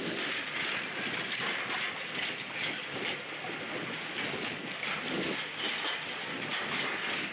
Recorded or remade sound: recorded